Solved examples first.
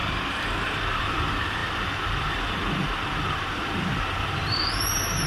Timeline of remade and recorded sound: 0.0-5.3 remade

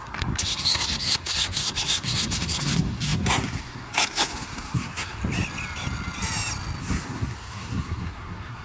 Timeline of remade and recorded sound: 0.0-5.2 remade; 5.2-6.8 recorded; 6.8-8.6 remade